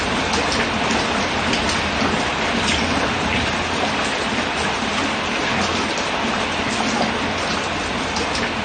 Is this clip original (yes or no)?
yes